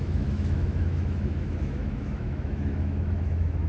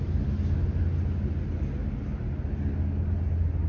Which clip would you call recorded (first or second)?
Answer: second